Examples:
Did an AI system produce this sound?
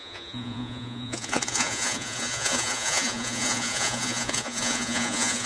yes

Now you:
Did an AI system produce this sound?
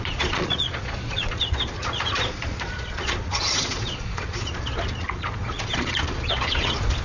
yes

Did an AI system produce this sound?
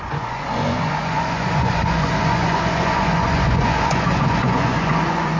yes